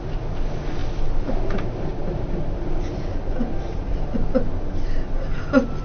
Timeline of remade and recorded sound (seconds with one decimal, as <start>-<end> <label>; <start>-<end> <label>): 0.0-5.8 recorded